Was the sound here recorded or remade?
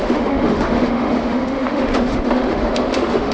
remade